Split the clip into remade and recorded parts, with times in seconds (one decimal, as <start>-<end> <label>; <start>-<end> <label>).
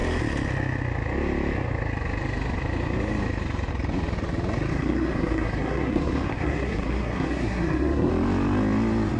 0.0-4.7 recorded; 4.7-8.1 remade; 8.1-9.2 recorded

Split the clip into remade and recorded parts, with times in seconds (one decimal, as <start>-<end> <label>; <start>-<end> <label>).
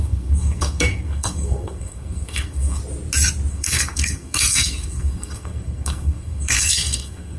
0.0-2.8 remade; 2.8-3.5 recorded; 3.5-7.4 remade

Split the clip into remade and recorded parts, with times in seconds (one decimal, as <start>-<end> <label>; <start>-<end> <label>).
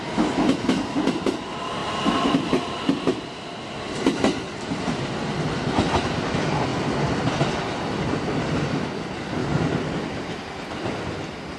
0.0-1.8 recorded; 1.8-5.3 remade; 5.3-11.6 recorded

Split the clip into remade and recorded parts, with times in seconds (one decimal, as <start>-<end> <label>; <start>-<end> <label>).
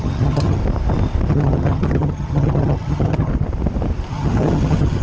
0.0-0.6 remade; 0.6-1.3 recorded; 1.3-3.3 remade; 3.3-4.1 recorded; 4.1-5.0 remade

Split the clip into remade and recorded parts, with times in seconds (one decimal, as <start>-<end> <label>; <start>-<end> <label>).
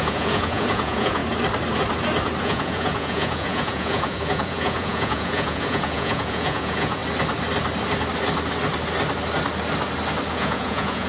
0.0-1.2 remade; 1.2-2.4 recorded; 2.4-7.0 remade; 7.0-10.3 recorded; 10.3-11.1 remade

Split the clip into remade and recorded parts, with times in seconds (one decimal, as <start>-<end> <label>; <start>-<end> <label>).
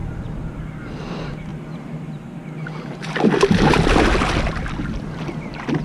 0.0-5.8 recorded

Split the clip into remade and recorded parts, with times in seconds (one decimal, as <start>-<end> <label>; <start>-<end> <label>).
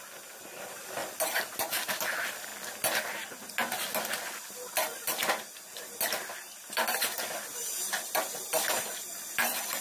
0.0-2.5 remade; 2.5-4.5 recorded; 4.5-5.2 remade; 5.2-7.0 recorded; 7.0-9.8 remade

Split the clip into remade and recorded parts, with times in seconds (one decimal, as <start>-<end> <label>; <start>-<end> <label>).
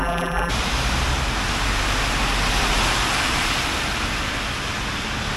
0.0-0.5 remade; 0.5-5.4 recorded